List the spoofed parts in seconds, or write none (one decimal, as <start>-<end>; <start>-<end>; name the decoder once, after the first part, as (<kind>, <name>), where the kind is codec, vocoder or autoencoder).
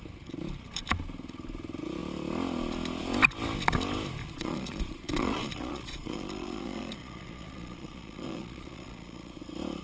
4.2-9.4 (vocoder, Vocos)